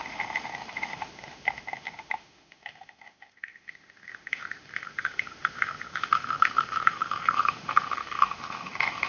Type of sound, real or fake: fake